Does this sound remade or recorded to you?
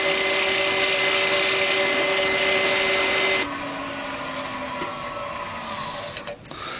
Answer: recorded